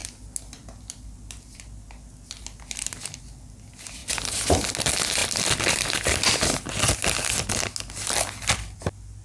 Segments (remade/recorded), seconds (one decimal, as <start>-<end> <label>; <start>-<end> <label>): 0.0-9.2 recorded